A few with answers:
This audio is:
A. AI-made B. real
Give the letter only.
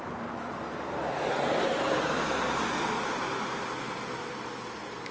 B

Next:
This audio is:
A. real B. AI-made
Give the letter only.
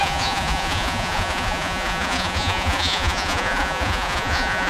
B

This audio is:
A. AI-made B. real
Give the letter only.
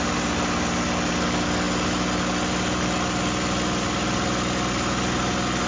B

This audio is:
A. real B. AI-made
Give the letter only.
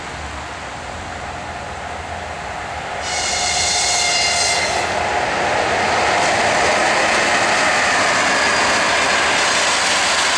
A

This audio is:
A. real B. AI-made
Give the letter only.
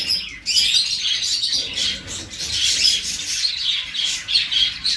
A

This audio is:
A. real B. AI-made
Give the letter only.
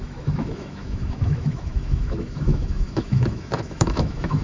B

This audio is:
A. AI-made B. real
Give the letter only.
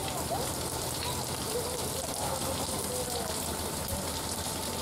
B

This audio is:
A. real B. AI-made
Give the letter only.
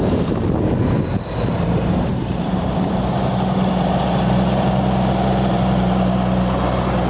B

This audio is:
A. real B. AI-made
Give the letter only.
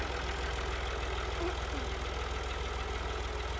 A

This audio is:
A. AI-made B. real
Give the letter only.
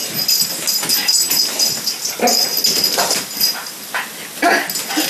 B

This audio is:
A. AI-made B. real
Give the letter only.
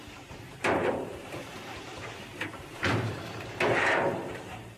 A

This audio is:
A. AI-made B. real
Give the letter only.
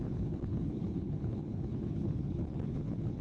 A